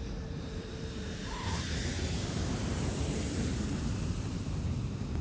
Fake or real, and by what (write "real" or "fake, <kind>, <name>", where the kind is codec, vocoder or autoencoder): fake, vocoder, BigVGAN v2